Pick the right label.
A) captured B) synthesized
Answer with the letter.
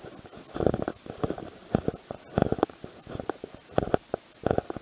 A